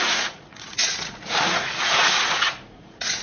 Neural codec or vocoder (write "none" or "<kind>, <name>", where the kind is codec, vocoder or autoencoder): vocoder, Vocos